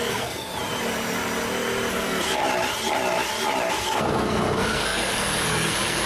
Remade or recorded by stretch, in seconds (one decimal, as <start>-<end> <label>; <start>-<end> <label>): 0.0-0.5 remade; 0.5-1.9 recorded; 1.9-2.4 remade; 2.4-3.7 recorded; 3.7-6.1 remade